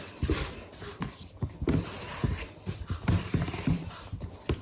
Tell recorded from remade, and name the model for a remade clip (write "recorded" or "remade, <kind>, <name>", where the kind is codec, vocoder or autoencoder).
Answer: remade, vocoder, BigVGAN v2